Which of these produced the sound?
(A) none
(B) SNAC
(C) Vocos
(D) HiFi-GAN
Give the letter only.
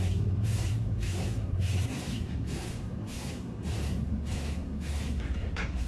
B